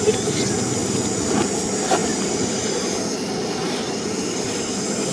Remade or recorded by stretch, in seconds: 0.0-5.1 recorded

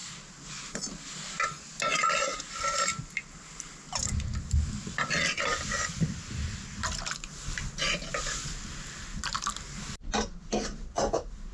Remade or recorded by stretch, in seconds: 0.0-11.5 recorded

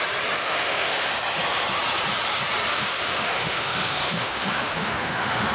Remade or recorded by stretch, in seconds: 0.0-0.4 recorded; 0.4-1.1 remade; 1.1-2.7 recorded; 2.7-5.5 remade

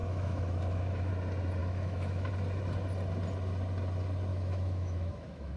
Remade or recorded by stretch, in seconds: 0.0-1.1 remade; 1.1-1.6 recorded; 1.6-2.3 remade; 2.3-4.3 recorded; 4.3-5.6 remade

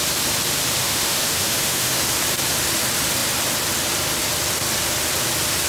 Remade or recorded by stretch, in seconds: 0.0-0.8 recorded; 0.8-2.0 remade; 2.0-5.7 recorded